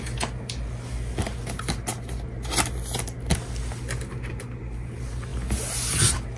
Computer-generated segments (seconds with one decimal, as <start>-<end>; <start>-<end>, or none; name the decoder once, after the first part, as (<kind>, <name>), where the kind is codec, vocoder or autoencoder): none